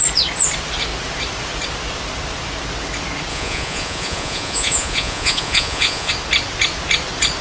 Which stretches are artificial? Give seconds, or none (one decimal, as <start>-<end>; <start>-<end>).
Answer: 3.3-6.1